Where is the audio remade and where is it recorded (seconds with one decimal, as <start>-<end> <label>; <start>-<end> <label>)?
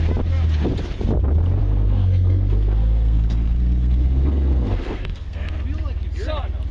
0.0-1.6 recorded; 1.6-5.6 remade; 5.6-6.7 recorded